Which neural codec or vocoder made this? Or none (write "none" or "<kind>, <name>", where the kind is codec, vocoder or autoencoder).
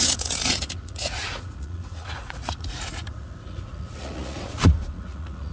vocoder, Vocos